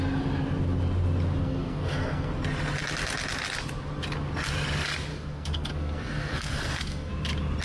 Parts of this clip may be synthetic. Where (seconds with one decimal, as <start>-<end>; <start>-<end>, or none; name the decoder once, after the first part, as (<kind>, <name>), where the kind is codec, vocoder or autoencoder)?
1.4-2.3 (codec, SNAC); 5.1-7.1